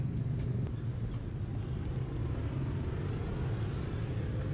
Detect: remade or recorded recorded